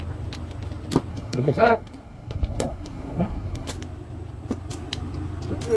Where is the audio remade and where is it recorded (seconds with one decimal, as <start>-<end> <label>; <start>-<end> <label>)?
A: 0.0-1.1 recorded; 1.1-3.7 remade; 3.7-5.8 recorded